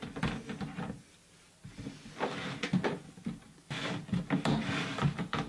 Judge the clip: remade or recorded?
recorded